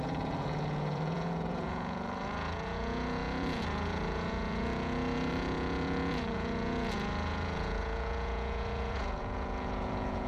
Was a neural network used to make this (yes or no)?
yes